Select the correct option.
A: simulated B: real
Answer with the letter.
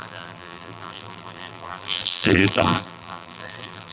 A